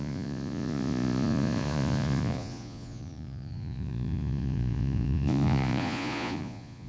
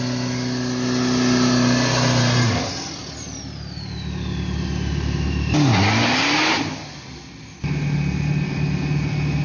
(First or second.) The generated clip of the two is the first